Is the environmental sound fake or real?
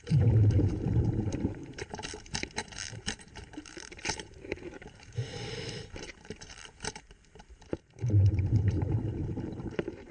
fake